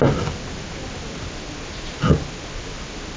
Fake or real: real